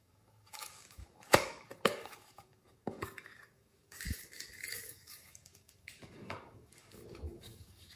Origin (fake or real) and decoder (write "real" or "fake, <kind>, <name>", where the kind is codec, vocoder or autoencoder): fake, codec, DAC